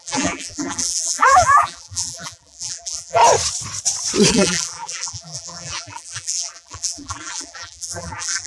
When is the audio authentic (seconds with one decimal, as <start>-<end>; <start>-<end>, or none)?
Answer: 3.2-4.3

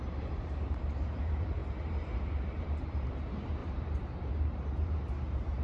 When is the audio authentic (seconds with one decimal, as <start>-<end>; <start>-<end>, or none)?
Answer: none

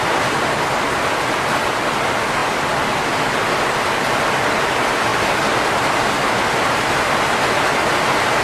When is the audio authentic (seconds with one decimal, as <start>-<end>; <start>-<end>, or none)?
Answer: 0.0-8.4

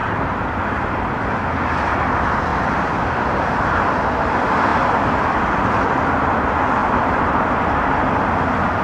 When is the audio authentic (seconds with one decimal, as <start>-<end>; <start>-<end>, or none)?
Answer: 0.0-2.5; 3.1-4.7; 6.3-6.8; 7.3-8.8

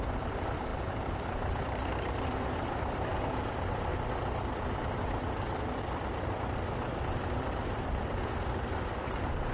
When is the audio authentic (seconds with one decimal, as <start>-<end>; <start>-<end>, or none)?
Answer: 3.9-4.5

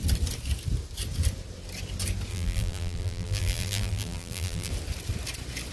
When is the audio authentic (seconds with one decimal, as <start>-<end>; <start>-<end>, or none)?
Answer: 0.0-2.3; 4.7-5.7

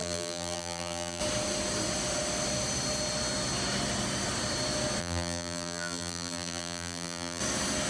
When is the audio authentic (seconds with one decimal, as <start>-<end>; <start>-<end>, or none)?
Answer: 1.2-5.0; 7.4-7.9

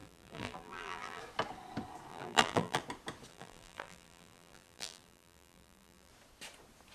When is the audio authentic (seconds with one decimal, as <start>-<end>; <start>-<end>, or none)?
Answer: 1.2-2.1; 2.8-3.3; 6.1-6.9